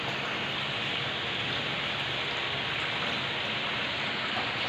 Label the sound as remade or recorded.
remade